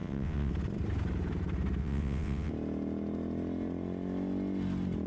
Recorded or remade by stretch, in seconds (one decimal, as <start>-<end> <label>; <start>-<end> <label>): 0.0-0.5 remade; 0.5-1.8 recorded; 1.8-2.5 remade; 2.5-5.1 recorded